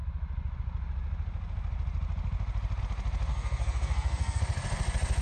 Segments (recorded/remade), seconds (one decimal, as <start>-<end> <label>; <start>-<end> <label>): 0.0-3.3 recorded; 3.3-4.4 remade; 4.4-5.2 recorded